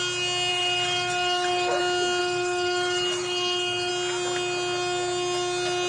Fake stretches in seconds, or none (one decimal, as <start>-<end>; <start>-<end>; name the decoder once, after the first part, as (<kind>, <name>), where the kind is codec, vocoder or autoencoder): 0.5-1.8 (codec, DAC); 2.2-3.9